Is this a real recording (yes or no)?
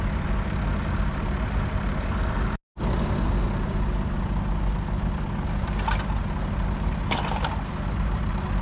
yes